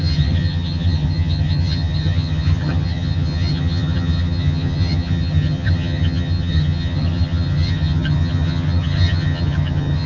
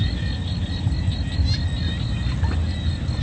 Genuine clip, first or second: second